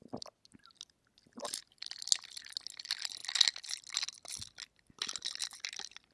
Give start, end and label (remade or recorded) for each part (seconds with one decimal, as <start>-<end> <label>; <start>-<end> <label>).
0.0-6.1 recorded